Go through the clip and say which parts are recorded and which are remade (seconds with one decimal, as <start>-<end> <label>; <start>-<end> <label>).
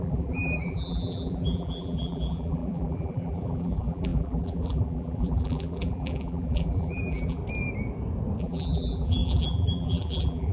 0.0-7.4 remade; 7.4-8.4 recorded; 8.4-10.5 remade